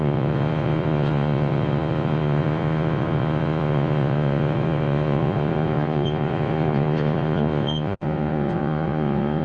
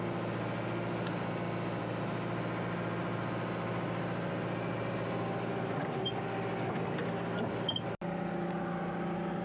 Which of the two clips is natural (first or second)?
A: second